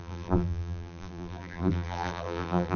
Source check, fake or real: fake